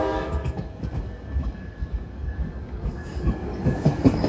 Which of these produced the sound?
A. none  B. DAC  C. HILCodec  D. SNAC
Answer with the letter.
B